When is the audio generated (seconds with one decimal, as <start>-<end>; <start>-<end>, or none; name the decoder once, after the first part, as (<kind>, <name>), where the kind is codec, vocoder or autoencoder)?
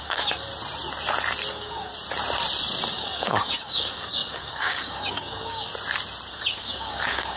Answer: 0.0-0.5 (codec, DAC); 1.5-1.9; 2.9-5.7; 6.3-7.4